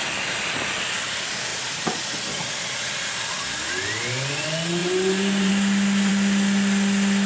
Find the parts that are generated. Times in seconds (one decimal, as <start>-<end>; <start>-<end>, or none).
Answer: 1.5-2.0; 4.8-5.5